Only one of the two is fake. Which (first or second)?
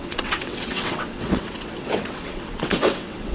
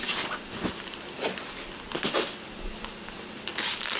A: first